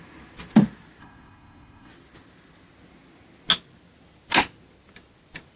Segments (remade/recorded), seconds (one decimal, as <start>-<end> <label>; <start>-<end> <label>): 0.0-1.0 recorded; 1.0-1.9 remade; 1.9-5.6 recorded